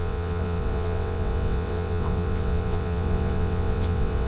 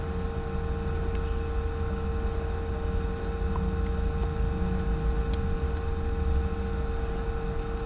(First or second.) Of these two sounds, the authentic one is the second